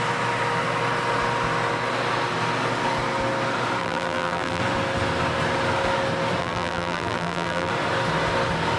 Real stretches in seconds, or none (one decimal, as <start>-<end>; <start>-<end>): 0.0-3.8; 4.6-6.4; 7.7-8.8